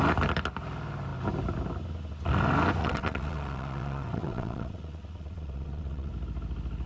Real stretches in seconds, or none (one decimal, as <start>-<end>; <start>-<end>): 0.0-2.8; 6.1-6.9